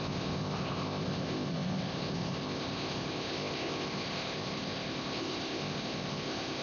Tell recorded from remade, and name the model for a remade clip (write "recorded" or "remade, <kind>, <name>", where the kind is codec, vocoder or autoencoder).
remade, codec, ZipCodec